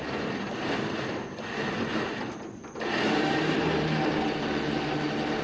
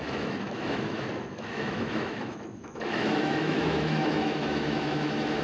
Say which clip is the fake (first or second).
second